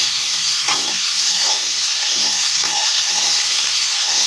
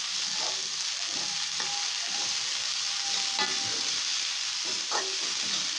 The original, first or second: second